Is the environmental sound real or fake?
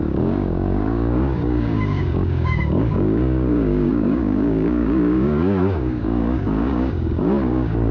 fake